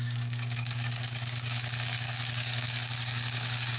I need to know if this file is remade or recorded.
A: remade